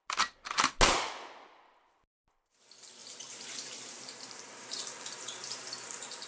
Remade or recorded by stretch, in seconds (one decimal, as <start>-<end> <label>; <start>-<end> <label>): 0.0-3.0 recorded; 3.0-6.3 remade